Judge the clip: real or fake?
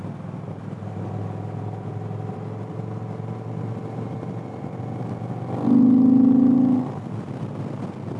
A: real